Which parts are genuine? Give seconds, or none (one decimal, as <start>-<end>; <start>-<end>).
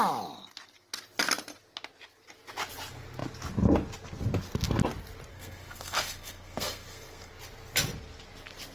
0.0-5.3; 7.3-8.7